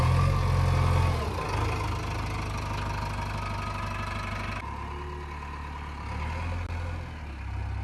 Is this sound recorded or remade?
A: recorded